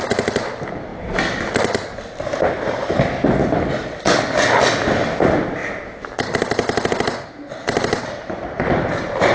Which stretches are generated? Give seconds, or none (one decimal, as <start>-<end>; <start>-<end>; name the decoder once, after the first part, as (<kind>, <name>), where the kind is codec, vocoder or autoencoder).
none